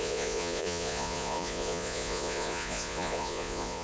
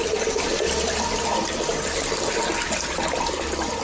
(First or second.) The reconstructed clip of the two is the first